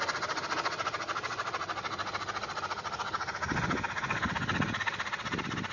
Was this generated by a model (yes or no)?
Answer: no